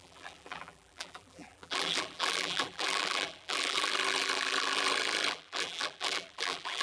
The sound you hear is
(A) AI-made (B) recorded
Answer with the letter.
A